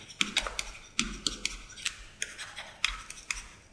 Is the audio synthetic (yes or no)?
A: no